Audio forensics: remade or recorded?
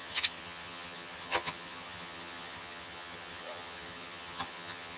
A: remade